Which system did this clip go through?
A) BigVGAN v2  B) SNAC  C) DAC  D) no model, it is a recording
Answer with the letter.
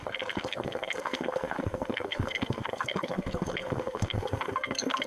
B